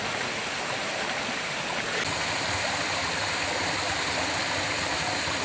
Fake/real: real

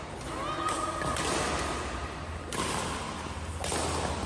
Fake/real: real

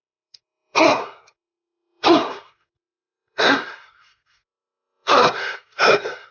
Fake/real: fake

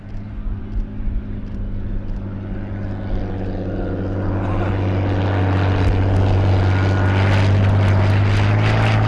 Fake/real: real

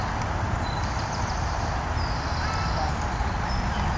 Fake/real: real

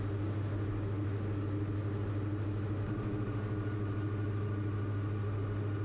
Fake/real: real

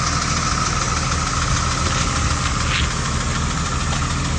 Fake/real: real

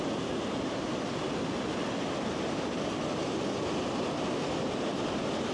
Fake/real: real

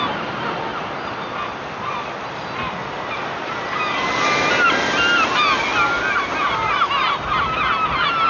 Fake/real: real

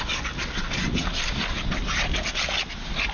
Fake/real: real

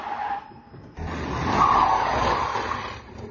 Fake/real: real